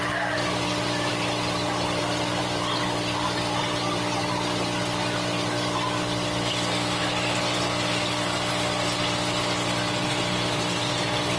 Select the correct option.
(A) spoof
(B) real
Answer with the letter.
B